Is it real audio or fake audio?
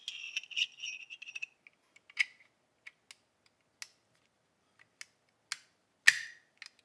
real